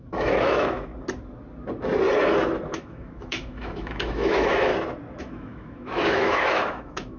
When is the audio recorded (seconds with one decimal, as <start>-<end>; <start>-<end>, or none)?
0.9-2.7; 4.7-5.2

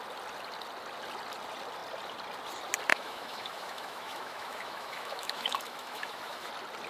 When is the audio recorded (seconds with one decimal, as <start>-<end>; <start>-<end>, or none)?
0.0-2.9; 6.5-6.9